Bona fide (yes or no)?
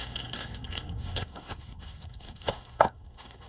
no